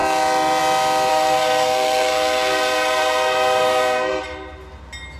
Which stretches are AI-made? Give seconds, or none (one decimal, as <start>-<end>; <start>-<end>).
1.1-4.2